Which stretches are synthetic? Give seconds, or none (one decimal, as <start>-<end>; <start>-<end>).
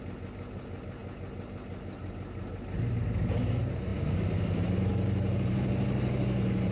4.9-6.7